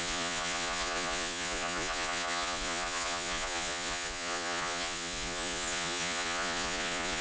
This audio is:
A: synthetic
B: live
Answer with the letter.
A